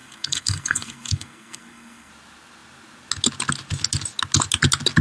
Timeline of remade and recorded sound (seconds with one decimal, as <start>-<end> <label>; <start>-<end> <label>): 0.0-2.1 remade; 2.1-5.0 recorded

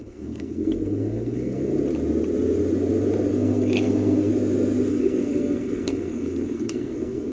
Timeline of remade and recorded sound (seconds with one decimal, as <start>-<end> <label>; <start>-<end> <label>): 0.0-1.7 remade; 1.7-3.3 recorded; 3.3-4.3 remade; 4.3-4.9 recorded; 4.9-7.3 remade

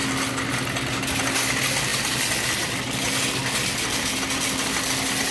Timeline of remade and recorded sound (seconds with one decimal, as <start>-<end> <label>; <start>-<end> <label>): 0.0-5.3 recorded

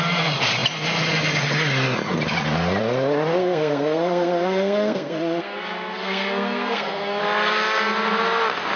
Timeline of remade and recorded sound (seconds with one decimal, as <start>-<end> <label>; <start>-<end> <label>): 0.0-3.4 recorded; 3.4-7.2 remade; 7.2-8.8 recorded